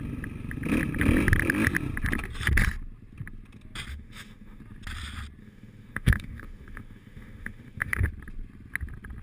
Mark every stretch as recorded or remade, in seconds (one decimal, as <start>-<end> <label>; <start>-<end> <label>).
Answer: 0.0-3.9 recorded; 3.9-4.6 remade; 4.6-5.4 recorded; 5.4-8.1 remade; 8.1-9.2 recorded